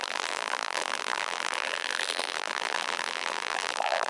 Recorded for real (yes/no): no